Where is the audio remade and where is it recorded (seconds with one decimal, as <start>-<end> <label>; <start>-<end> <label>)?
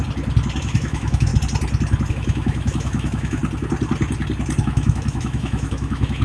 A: 0.0-0.6 recorded; 0.6-1.3 remade; 1.3-2.1 recorded; 2.1-3.4 remade; 3.4-4.6 recorded; 4.6-6.2 remade